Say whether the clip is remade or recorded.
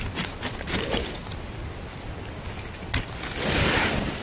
recorded